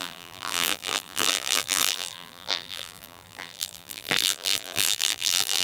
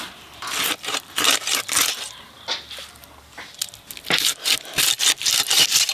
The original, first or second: second